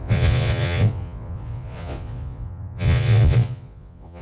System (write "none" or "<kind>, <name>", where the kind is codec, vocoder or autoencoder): vocoder, Vocos